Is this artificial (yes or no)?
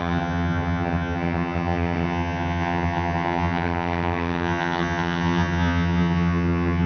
yes